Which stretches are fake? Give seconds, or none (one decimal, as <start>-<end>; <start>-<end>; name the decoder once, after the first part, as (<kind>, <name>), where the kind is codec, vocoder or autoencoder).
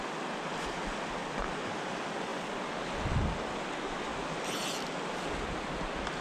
4.1-4.9 (vocoder, BigVGAN v2)